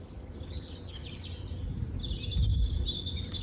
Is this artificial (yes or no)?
no